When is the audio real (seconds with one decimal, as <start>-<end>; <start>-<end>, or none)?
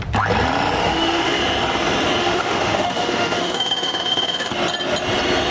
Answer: 0.0-0.8; 1.4-2.2; 4.5-5.5